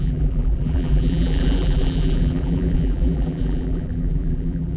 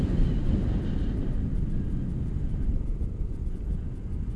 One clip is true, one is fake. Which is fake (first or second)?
first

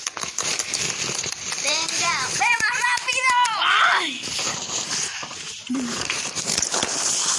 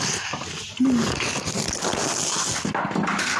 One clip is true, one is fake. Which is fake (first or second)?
first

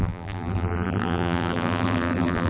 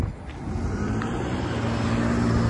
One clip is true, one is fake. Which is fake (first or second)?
first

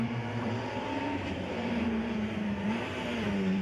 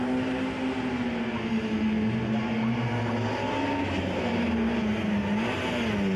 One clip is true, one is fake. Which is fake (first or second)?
first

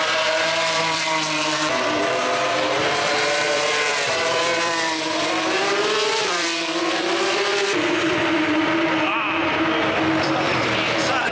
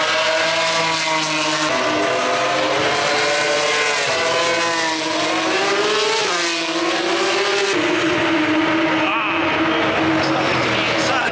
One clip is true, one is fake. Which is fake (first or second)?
first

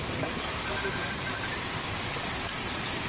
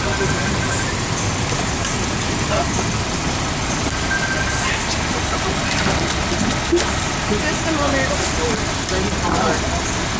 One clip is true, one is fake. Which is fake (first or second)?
first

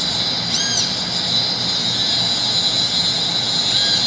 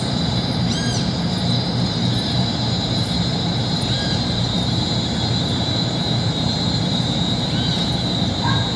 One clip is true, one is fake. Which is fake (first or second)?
second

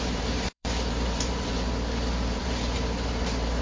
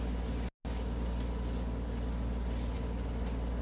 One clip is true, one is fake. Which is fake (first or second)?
first